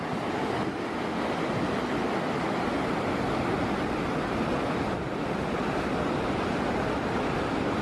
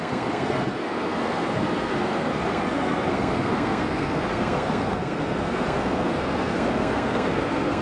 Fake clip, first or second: second